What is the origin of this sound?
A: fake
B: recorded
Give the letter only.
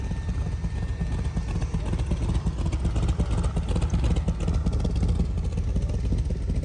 B